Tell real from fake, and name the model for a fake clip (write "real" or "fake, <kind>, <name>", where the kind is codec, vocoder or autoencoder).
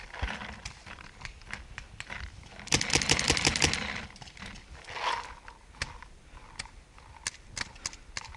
real